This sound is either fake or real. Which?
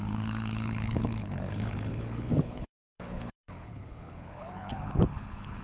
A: fake